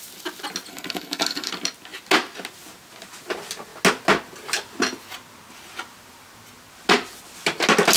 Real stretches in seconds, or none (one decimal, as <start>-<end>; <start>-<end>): 0.0-0.7; 1.5-8.0

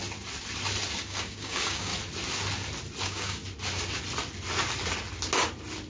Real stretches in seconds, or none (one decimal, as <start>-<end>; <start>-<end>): 0.0-1.0; 1.9-3.0; 3.4-5.9

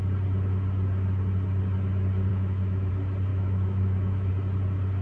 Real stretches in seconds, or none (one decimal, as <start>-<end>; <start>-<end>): 0.0-2.3; 2.9-3.3; 4.3-5.0

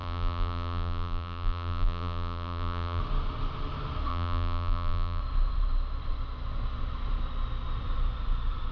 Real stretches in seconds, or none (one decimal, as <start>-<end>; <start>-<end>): 3.0-4.1; 5.2-8.7

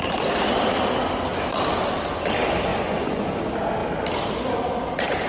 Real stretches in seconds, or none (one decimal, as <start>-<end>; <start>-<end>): 0.0-2.7; 3.4-5.3

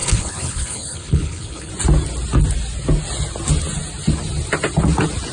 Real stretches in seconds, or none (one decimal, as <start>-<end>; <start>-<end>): 1.7-5.3